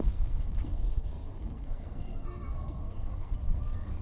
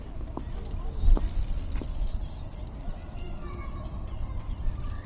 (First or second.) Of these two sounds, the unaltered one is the second